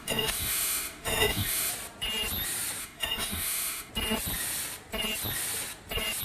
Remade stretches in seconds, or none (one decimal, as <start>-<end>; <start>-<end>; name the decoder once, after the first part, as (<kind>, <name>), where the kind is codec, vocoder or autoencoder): 0.0-1.7 (autoencoder, DAC-VAE); 2.8-3.9